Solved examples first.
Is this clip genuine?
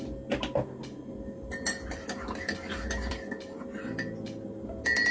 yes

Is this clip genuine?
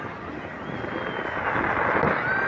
yes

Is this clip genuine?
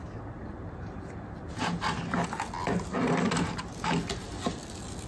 yes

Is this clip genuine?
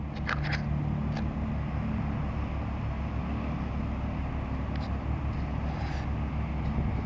yes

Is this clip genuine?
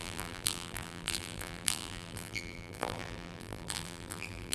no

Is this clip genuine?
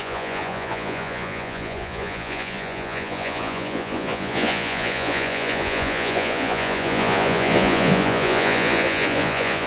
no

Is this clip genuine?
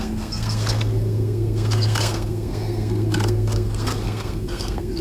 no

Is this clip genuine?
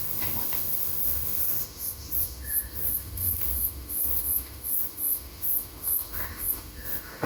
no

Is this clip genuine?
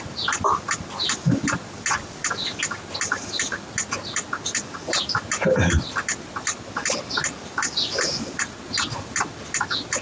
yes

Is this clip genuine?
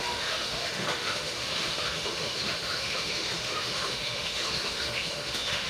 no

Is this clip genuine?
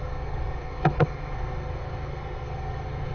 no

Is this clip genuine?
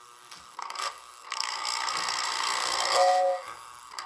no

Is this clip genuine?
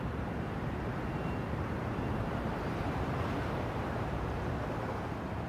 no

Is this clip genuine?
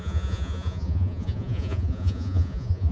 no